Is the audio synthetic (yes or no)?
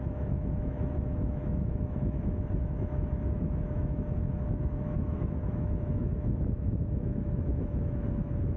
yes